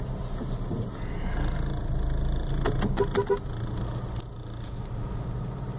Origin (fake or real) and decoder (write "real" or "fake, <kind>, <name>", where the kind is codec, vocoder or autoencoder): real